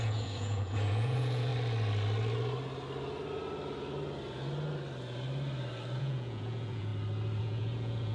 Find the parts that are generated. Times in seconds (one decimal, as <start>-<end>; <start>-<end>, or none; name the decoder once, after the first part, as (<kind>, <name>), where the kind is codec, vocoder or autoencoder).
0.0-1.5 (vocoder, Vocos); 6.0-6.9; 7.4-8.1